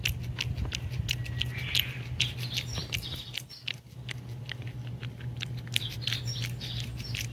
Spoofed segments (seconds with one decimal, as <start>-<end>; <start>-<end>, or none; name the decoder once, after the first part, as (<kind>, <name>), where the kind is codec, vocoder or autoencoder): none